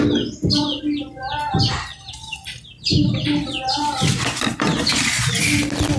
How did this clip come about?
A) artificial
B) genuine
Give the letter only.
B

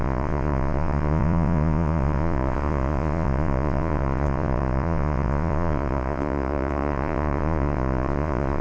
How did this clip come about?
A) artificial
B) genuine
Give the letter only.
A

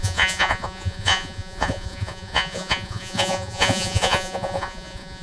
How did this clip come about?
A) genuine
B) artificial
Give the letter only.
B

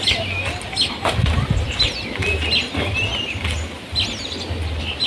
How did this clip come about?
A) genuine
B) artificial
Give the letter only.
A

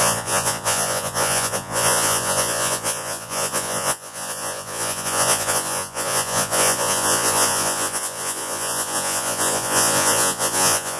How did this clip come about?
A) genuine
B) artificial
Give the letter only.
B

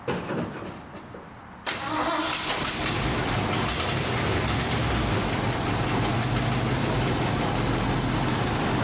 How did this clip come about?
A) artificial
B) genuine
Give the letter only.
B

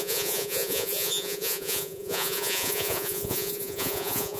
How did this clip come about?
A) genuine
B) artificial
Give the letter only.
B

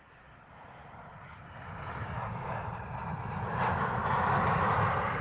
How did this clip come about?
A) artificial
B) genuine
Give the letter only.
B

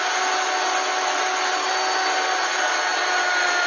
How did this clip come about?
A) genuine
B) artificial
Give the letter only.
A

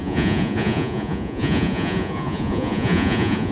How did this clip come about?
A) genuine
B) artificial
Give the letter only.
B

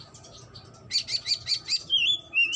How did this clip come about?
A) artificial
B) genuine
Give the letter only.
B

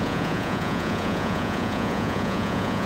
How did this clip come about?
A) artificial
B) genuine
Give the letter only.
A